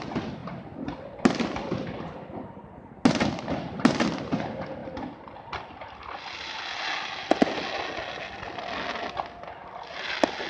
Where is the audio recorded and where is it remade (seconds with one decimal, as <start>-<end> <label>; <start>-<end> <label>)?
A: 0.0-10.5 recorded